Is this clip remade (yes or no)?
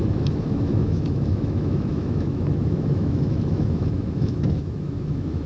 yes